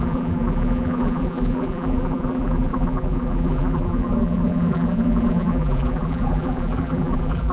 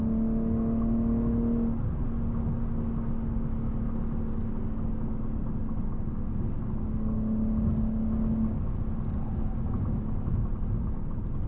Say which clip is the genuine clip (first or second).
second